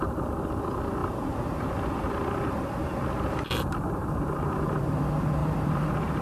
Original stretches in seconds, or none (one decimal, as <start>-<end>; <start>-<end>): 0.0-4.0; 5.0-5.4

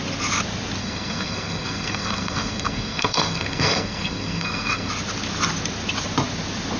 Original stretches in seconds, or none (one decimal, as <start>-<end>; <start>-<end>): 0.0-0.8; 4.9-6.8

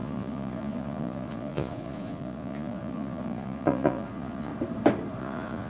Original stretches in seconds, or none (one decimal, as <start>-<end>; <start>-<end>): 4.5-5.2

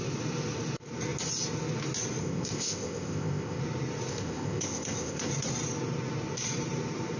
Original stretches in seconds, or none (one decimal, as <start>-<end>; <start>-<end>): 0.0-2.2; 3.6-4.1; 5.3-7.2

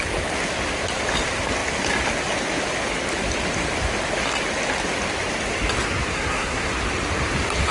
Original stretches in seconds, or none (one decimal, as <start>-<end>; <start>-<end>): 0.0-6.1; 6.7-7.7

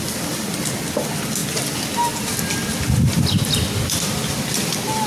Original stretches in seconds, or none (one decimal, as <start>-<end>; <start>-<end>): 0.0-5.1